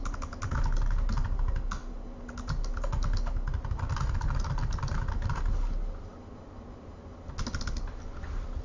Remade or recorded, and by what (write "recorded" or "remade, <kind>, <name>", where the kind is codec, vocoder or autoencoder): recorded